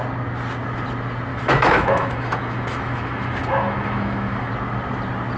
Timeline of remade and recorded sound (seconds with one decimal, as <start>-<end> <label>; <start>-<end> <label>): 0.0-1.3 recorded; 1.3-4.5 remade; 4.5-5.4 recorded

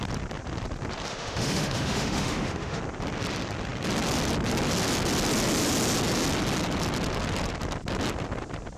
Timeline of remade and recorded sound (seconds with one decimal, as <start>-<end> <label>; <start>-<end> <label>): 0.0-1.1 recorded; 1.1-2.8 remade; 2.8-8.8 recorded

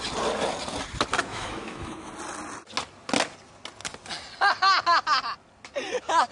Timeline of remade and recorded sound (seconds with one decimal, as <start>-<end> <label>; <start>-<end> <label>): 0.0-1.3 recorded; 1.3-2.1 remade; 2.1-6.3 recorded

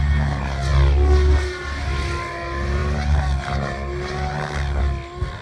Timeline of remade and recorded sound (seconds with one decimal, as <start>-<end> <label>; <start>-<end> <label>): 0.0-5.4 recorded

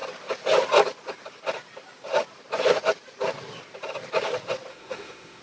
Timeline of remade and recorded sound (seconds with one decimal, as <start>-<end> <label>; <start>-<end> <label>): 0.0-4.7 recorded; 4.7-5.4 remade